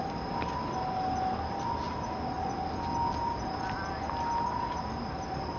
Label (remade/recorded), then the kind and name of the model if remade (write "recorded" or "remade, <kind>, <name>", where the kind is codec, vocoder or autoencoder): recorded